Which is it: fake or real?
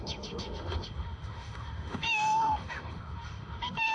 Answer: fake